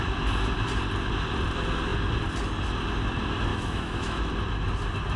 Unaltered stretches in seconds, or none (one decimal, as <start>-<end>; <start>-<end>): 0.0-3.5; 4.3-5.2